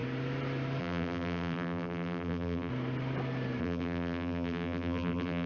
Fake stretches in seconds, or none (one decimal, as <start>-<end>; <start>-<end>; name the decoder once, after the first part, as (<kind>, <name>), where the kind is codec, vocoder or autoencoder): 0.8-2.7 (vocoder, BigVGAN v2); 3.6-5.5